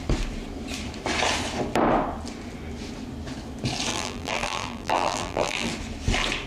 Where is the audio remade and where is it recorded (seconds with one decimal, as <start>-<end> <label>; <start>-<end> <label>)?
0.0-3.9 recorded; 3.9-5.7 remade; 5.7-6.5 recorded